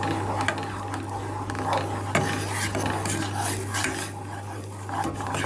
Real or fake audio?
real